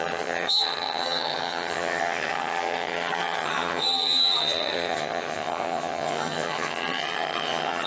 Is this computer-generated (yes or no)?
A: yes